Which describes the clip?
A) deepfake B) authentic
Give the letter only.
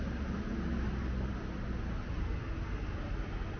B